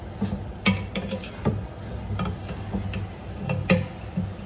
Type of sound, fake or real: real